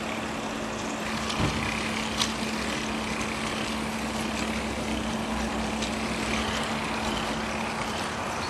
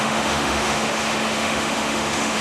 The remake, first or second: second